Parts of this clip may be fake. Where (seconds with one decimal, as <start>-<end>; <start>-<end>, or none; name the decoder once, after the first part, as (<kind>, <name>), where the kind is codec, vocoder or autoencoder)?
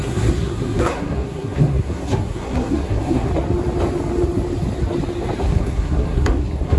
0.0-3.3 (codec, SNAC); 5.4-6.8